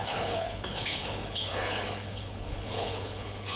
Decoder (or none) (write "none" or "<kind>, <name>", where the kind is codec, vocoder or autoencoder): codec, HILCodec